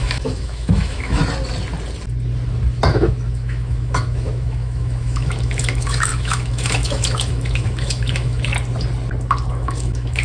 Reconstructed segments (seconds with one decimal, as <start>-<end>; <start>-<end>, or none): 0.0-1.2; 2.9-8.5; 9.5-10.2

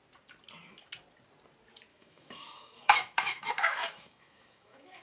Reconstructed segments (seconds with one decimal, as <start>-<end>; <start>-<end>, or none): 1.9-5.0

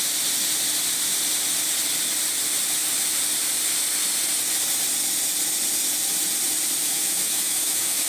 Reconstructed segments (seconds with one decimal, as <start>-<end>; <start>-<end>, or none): 6.8-8.1

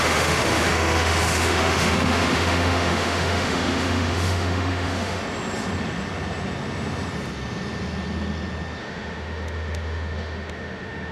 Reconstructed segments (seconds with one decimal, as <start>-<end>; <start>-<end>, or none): 0.0-5.2; 8.8-11.1